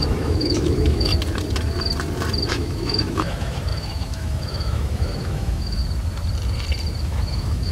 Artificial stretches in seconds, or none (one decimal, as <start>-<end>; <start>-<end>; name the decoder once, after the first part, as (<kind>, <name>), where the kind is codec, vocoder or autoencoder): 0.0-1.1 (autoencoder, DAC-VAE); 2.5-5.8; 7.0-7.7